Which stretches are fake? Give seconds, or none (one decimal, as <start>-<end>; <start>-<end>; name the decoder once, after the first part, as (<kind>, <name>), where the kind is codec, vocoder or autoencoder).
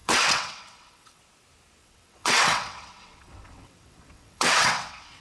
0.0-1.2 (vocoder, WaveNeXt); 1.8-5.2